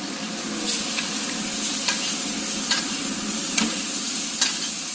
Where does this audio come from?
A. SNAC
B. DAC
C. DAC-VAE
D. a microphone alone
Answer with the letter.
D